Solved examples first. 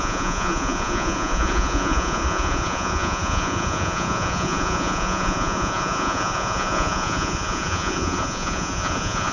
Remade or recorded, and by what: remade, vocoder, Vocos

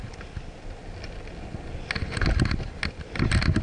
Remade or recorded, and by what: recorded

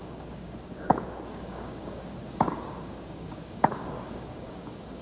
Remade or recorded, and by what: remade, codec, DAC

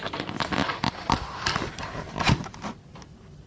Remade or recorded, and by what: recorded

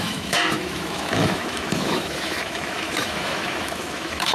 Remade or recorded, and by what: remade, autoencoder, DAC-VAE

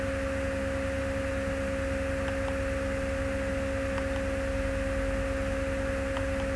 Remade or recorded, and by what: recorded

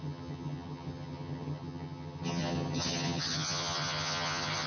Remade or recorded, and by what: remade, vocoder, HiFi-GAN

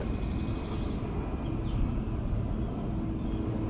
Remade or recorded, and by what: recorded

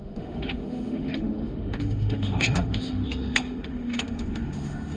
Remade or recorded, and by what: remade, autoencoder, DAC-VAE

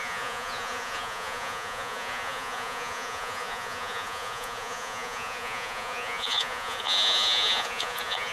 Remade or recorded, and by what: remade, vocoder, Vocos